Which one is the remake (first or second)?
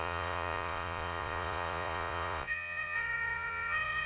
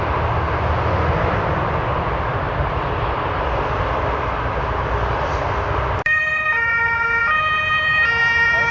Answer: first